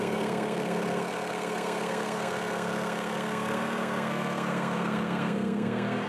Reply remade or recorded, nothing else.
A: remade